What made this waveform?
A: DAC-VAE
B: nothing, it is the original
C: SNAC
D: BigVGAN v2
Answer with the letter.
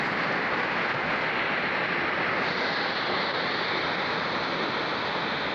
B